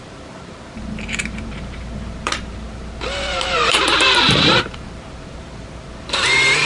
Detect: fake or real fake